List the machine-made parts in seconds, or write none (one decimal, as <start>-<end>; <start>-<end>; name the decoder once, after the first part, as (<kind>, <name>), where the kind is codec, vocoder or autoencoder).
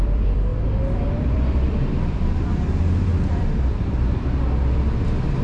0.0-0.5 (vocoder, BigVGAN v2); 1.1-5.4